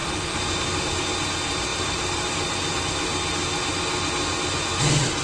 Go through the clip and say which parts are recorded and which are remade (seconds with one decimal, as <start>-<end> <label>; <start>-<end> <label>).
0.0-1.0 remade; 1.0-1.7 recorded; 1.7-2.8 remade; 2.8-5.2 recorded